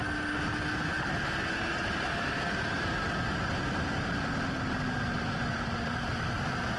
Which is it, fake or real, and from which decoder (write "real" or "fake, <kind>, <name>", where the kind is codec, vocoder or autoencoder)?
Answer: real